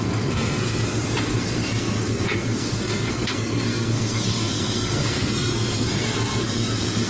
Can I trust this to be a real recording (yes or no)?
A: no